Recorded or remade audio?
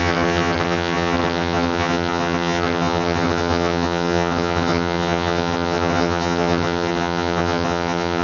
remade